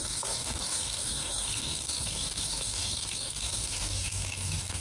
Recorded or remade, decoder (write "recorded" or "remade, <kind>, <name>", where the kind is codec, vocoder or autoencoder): remade, codec, DAC